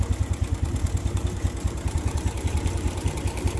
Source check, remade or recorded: remade